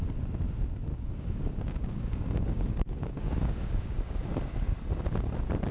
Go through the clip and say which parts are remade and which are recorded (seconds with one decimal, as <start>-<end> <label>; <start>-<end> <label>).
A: 0.0-0.9 recorded; 0.9-4.3 remade; 4.3-5.7 recorded